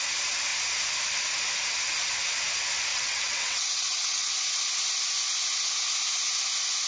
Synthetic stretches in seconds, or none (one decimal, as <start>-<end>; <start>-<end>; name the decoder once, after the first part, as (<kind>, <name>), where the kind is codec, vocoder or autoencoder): 2.9-4.3 (vocoder, WaveNeXt)